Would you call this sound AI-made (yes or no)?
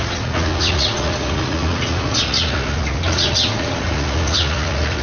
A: yes